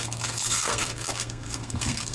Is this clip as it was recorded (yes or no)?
no